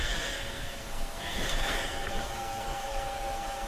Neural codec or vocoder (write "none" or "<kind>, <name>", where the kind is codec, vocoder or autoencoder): codec, SNAC